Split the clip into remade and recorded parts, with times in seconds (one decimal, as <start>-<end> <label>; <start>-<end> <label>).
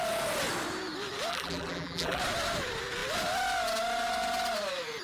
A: 0.0-1.3 recorded; 1.3-2.2 remade; 2.2-5.0 recorded